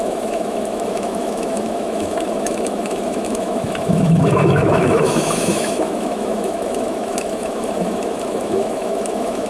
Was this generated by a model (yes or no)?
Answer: yes